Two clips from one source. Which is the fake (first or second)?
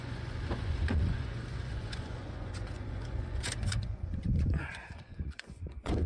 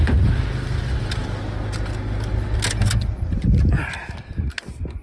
first